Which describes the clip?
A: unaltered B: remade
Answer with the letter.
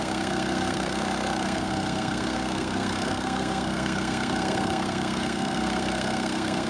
B